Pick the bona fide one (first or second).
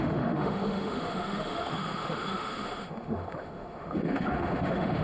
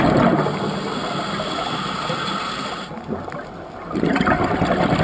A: second